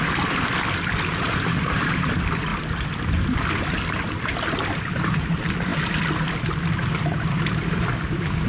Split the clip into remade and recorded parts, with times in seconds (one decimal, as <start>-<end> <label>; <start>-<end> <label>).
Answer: 0.0-2.5 remade; 2.5-3.0 recorded; 3.0-5.7 remade; 5.7-6.5 recorded; 6.5-8.5 remade